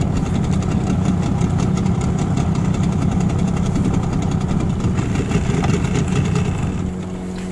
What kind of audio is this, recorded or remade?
recorded